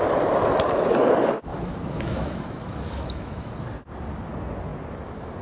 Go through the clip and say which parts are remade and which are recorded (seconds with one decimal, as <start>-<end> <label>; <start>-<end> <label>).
0.0-1.5 recorded; 1.5-3.5 remade; 3.5-5.4 recorded